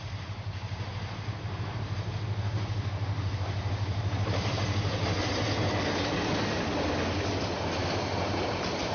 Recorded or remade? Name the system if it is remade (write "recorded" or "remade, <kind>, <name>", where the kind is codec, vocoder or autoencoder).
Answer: recorded